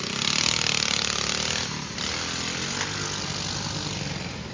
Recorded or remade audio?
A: recorded